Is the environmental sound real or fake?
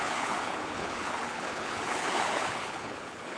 fake